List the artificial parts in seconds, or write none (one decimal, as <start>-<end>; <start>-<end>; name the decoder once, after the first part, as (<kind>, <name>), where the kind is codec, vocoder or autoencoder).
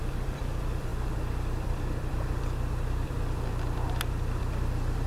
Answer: 0.0-5.1 (vocoder, BigVGAN v2)